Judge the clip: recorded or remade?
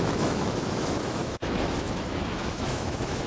remade